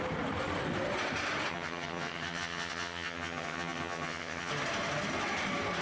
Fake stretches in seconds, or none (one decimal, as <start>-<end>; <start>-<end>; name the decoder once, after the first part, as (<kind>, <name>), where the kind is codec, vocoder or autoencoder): 1.5-4.5 (vocoder, HiFi-GAN)

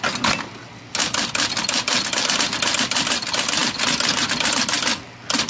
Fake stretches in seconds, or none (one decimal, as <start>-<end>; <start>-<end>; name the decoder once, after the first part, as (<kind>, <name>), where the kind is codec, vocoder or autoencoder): none

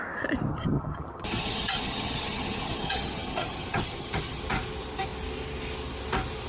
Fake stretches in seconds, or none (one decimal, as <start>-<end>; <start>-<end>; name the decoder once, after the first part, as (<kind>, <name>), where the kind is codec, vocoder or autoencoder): 0.5-4.4 (vocoder, HiFi-GAN)